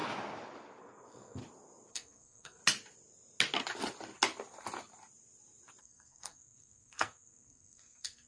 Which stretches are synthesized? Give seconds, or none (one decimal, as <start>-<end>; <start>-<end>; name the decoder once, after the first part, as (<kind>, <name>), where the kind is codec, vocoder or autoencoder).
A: 0.8-1.4 (codec, SNAC); 1.9-2.6; 5.8-8.3

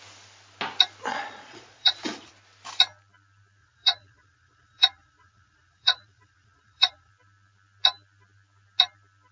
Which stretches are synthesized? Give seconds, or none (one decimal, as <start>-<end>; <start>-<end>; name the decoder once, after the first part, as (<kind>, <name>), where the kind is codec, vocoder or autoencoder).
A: 1.1-2.3 (vocoder, Vocos); 3.6-7.1

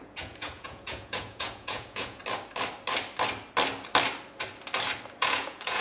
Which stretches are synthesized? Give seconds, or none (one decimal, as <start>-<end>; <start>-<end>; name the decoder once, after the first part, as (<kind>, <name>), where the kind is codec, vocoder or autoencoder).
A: 0.0-2.2 (vocoder, Vocos); 5.2-5.8

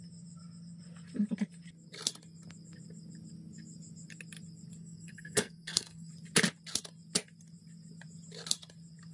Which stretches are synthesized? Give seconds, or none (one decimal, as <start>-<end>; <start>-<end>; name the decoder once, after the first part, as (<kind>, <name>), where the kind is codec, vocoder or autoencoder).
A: 4.8-6.1 (codec, SNAC)

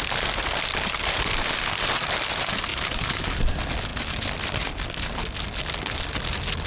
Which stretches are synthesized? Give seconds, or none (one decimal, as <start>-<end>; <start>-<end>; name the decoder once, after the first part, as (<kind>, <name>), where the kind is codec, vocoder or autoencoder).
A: 2.7-3.4 (vocoder, BigVGAN v2)

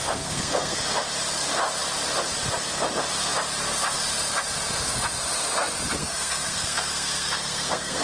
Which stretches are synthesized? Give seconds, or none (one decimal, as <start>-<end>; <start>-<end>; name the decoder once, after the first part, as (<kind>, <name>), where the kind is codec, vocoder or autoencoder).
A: 0.0-0.8 (codec, SNAC); 6.0-8.0

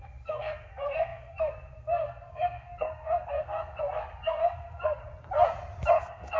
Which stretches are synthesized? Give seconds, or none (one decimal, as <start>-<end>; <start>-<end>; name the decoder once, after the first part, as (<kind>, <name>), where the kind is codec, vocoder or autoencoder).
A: 0.0-5.0 (codec, SNAC); 5.9-6.4